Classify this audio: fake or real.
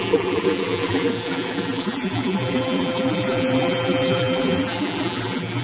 fake